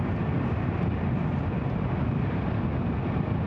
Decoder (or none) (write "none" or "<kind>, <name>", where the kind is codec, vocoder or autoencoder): vocoder, BigVGAN v2